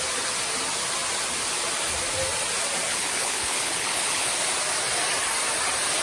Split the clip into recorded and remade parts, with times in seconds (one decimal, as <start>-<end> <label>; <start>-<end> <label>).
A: 0.0-2.9 recorded; 2.9-4.3 remade; 4.3-6.0 recorded